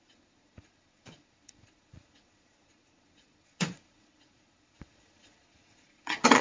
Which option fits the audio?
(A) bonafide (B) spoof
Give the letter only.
B